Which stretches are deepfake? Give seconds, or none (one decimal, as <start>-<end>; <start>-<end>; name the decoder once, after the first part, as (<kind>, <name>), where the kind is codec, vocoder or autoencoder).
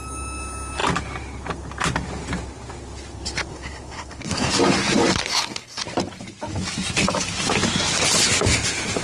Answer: 3.5-4.5 (codec, SNAC); 5.3-5.8